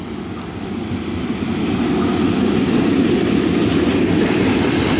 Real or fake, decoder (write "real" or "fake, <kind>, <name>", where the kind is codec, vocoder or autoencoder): real